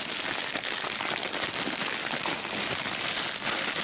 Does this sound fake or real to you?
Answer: real